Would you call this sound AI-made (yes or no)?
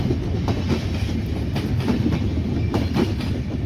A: no